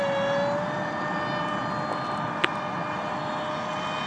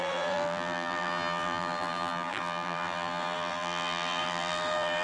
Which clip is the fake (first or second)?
second